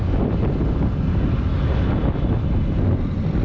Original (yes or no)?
yes